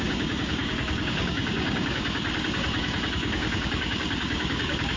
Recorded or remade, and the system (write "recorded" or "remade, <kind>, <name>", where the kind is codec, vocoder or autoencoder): remade, codec, DAC